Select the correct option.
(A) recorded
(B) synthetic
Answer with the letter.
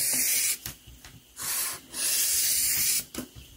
A